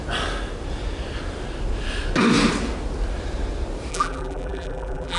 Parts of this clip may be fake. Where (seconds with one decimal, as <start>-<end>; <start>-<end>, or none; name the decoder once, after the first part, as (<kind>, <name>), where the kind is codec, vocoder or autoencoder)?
3.9-5.2 (vocoder, BigVGAN v2)